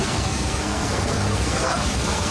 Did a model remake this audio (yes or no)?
yes